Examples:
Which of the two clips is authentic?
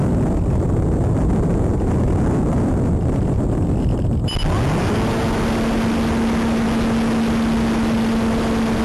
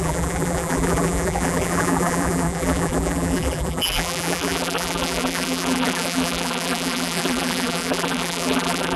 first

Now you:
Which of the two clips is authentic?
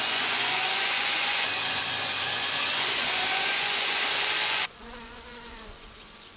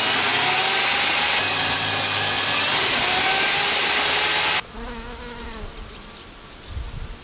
second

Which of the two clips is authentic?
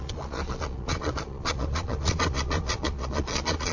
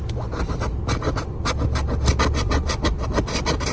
second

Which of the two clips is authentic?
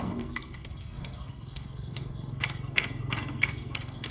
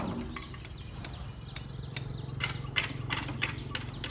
second